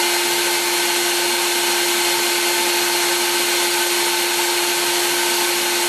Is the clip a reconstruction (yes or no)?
no